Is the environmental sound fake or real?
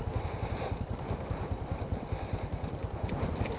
real